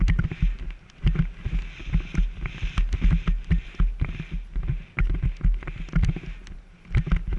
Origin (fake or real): real